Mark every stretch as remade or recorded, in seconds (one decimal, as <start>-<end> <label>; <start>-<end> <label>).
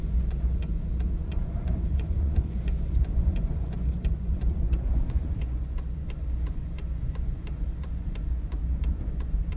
0.0-9.6 remade